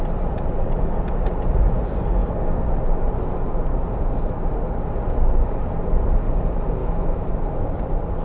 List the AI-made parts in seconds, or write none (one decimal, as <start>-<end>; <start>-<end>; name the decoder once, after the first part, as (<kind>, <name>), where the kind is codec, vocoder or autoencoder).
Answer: 6.8-7.3 (autoencoder, DAC-VAE)